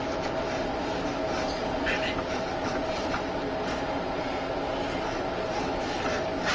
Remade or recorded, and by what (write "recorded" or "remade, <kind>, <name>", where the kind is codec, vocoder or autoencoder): recorded